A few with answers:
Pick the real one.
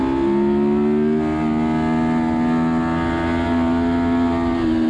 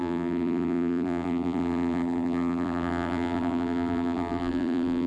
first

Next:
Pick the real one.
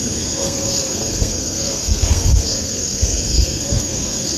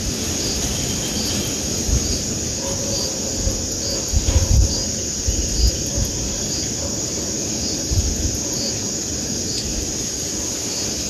second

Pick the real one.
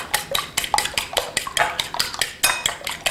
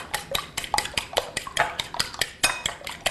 first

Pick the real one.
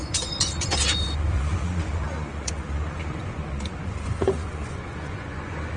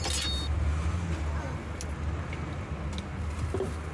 second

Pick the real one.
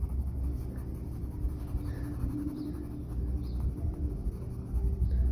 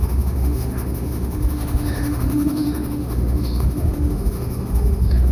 first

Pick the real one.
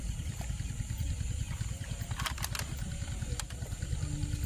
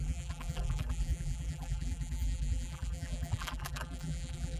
first